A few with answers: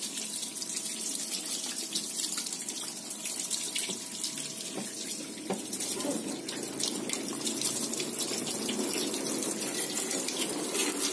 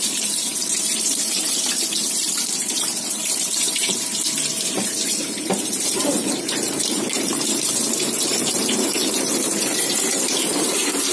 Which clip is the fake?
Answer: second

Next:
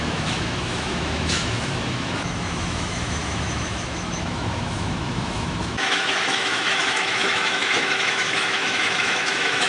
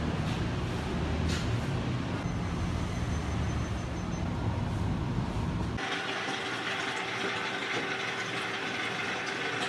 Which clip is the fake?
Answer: first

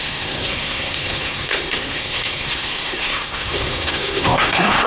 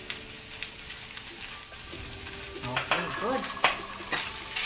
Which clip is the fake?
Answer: first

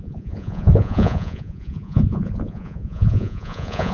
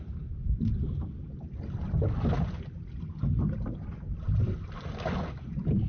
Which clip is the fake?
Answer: first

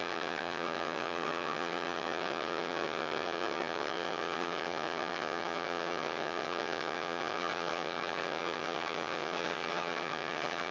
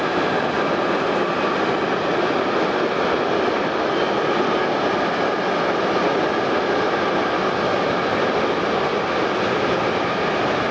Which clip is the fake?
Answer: first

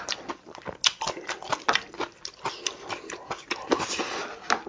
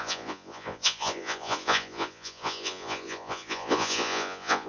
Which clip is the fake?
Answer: second